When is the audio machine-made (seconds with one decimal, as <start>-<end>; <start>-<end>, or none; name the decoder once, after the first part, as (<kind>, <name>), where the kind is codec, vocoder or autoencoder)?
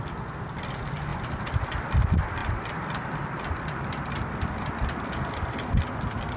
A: 1.1-2.0 (vocoder, BigVGAN v2); 2.4-6.4